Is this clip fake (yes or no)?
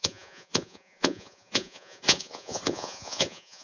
yes